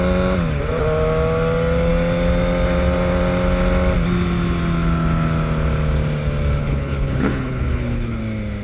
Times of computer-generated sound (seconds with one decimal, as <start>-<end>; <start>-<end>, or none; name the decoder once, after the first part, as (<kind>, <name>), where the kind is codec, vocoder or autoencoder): 6.6-8.2 (codec, HILCodec)